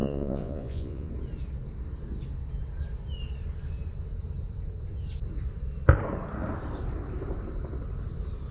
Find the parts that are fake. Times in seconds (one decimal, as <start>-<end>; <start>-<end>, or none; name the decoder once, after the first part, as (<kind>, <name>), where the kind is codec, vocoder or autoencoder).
0.0-1.1 (vocoder, Vocos)